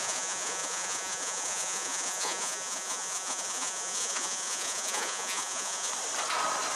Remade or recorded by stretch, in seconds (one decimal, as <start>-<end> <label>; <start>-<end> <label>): 0.0-5.9 remade; 5.9-6.8 recorded